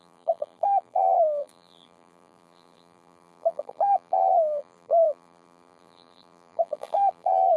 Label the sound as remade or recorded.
remade